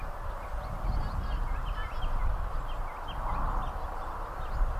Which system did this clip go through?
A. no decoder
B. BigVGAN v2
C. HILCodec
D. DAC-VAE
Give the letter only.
A